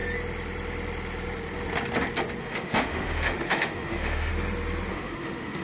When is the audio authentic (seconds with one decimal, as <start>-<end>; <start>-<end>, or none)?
0.0-2.4; 4.3-4.9